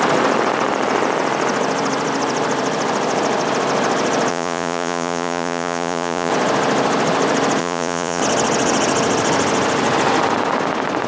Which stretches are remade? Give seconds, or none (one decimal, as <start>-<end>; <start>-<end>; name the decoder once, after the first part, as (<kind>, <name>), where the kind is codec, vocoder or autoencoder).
4.3-6.3 (vocoder, Vocos); 7.6-8.2